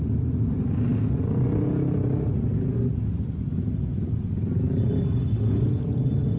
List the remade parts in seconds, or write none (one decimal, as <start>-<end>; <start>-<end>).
none

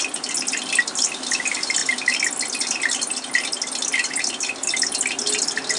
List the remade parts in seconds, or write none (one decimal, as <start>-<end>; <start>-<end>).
none

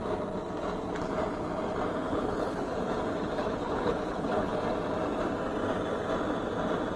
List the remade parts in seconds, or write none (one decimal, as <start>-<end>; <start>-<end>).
2.0-2.7; 3.1-4.5

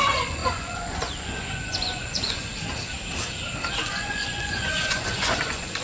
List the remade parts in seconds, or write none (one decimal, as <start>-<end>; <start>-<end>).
0.0-2.5; 3.8-5.8

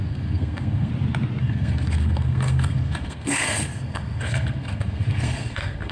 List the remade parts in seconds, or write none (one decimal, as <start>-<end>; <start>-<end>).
0.0-0.9; 1.4-5.9

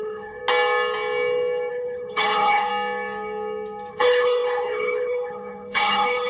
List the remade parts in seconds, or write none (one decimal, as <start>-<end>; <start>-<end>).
0.0-0.4; 1.7-2.7; 3.9-6.3

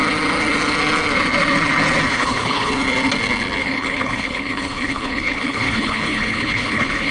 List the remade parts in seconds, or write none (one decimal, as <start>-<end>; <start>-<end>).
2.1-2.7; 3.6-7.1